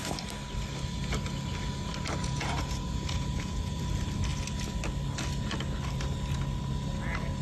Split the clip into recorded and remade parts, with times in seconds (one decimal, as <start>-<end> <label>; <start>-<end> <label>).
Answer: 0.0-2.2 recorded; 2.2-3.8 remade; 3.8-7.4 recorded